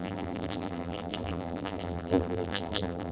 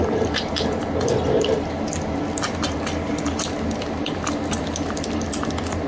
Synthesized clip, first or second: first